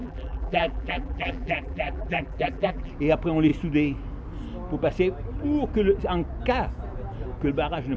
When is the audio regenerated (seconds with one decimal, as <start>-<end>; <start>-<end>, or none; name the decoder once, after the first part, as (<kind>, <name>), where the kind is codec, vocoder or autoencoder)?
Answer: 0.0-2.9 (vocoder, BigVGAN v2)